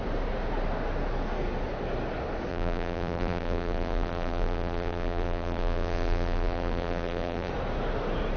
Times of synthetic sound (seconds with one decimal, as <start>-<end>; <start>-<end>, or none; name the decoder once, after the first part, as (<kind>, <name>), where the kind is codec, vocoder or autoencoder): 2.5-7.5 (vocoder, BigVGAN v2)